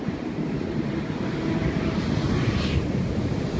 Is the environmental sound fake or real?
fake